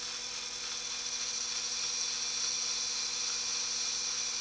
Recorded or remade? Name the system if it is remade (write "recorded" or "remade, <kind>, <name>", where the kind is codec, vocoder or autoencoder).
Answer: recorded